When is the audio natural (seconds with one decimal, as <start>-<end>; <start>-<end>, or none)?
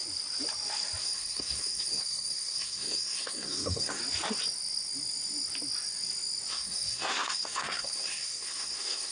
0.0-1.0; 4.0-6.5